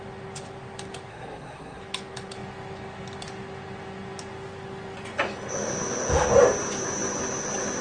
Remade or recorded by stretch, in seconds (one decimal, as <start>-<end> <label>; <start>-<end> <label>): 0.0-1.1 recorded; 1.1-1.8 remade; 1.8-7.8 recorded